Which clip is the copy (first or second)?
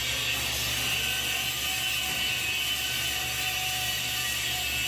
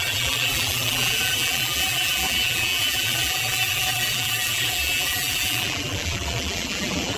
second